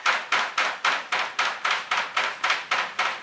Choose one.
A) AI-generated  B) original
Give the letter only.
B